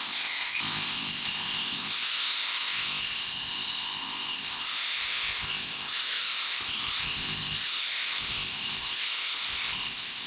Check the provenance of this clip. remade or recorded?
remade